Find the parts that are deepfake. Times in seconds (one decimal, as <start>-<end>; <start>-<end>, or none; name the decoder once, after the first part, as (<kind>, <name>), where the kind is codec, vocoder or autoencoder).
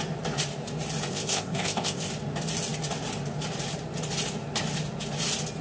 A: 1.1-2.1 (codec, ZipCodec)